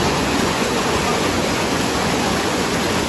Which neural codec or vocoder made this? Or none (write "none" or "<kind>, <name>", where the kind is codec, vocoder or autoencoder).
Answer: vocoder, Vocos